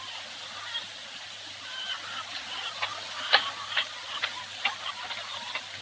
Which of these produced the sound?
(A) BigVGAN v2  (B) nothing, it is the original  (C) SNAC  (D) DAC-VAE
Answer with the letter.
B